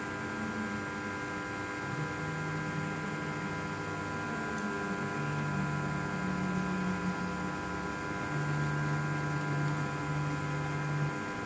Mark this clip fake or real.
real